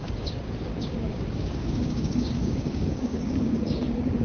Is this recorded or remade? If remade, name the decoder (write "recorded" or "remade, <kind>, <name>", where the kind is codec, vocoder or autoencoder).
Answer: remade, codec, DAC